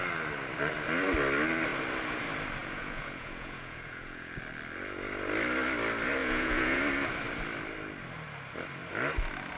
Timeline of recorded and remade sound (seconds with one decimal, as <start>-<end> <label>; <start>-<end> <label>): 0.0-2.6 recorded; 2.6-4.4 remade; 4.4-6.2 recorded; 6.2-6.8 remade; 6.8-9.6 recorded